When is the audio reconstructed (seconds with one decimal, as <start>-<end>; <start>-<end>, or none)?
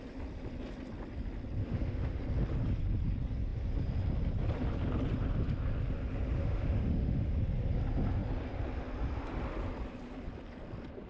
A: 1.6-2.2; 6.4-7.3